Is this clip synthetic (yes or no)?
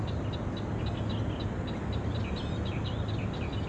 no